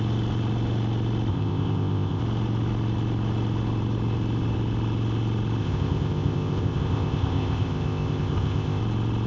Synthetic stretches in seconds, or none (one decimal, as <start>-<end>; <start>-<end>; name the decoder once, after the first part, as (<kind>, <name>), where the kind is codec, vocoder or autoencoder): 1.3-2.2 (codec, ZipCodec); 5.6-8.8